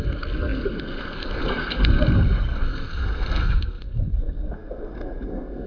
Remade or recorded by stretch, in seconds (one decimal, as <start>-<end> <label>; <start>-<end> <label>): 0.0-5.7 remade